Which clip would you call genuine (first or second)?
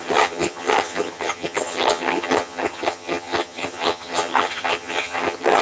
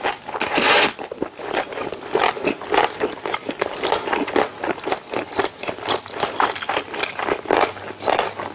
second